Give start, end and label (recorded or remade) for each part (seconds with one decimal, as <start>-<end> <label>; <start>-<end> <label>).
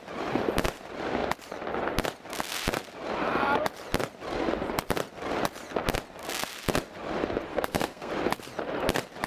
0.0-7.5 recorded; 7.5-8.1 remade; 8.1-9.3 recorded